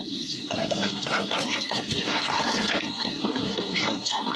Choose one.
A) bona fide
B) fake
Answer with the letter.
B